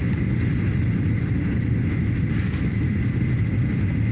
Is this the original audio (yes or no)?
yes